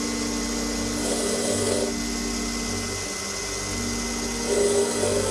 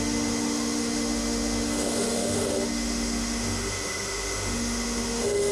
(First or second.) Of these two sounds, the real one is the first